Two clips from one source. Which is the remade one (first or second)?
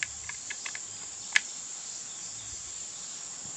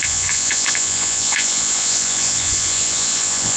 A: second